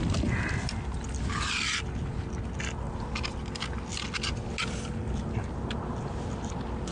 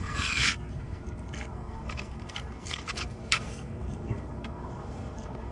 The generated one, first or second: second